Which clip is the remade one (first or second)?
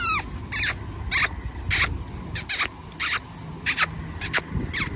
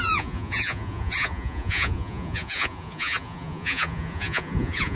second